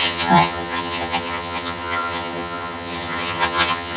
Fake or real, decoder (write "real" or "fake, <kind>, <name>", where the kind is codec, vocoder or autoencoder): fake, vocoder, HiFi-GAN